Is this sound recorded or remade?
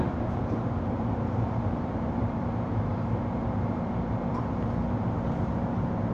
remade